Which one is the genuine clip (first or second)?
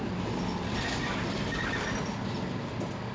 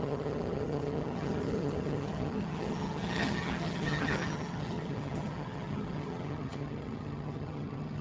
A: first